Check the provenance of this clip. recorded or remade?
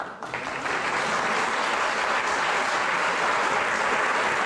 recorded